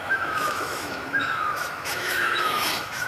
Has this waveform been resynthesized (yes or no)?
yes